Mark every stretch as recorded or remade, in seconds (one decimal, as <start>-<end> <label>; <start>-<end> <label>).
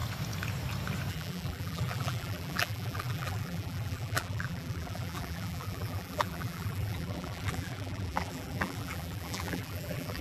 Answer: 0.0-1.1 recorded; 1.1-10.2 remade